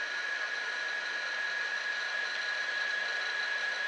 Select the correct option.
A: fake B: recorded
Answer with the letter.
B